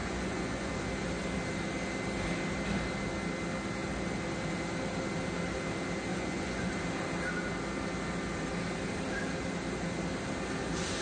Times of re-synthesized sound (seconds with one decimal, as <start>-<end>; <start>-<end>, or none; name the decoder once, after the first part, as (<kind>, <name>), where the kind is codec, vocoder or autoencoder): 0.0-0.7 (vocoder, Vocos); 6.1-6.7